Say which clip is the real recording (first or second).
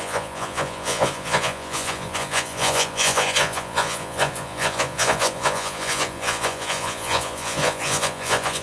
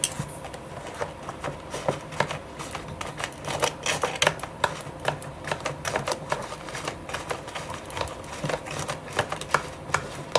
second